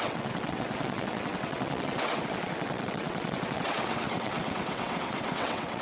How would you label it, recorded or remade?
remade